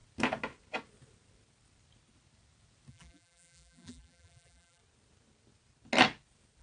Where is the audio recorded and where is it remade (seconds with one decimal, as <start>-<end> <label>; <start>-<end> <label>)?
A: 0.0-2.9 recorded; 2.9-4.8 remade; 4.8-6.6 recorded